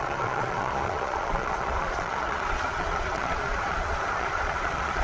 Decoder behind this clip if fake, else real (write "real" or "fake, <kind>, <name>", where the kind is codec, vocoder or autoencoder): fake, vocoder, Vocos